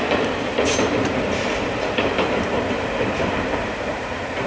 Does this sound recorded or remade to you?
remade